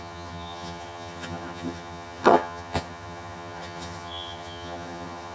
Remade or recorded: remade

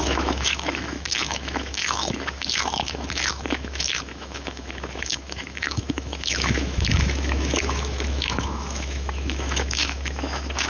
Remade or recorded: remade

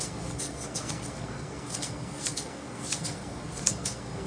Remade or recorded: remade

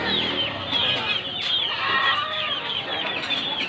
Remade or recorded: recorded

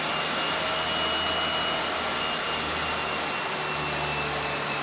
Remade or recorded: recorded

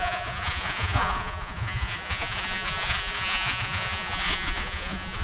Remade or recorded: remade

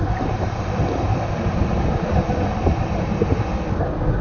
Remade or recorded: recorded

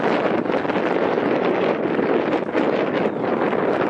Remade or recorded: recorded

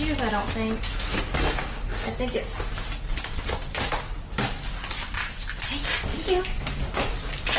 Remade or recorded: recorded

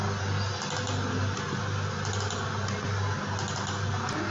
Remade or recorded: recorded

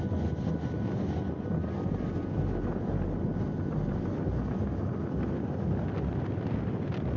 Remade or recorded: recorded